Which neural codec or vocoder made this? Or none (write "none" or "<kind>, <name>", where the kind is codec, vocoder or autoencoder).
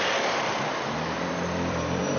vocoder, BigVGAN v2